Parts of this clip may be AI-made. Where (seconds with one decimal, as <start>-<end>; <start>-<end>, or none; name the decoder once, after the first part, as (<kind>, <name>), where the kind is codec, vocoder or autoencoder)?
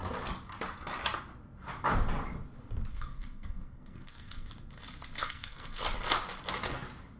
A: 2.9-4.5 (codec, SNAC); 5.2-5.8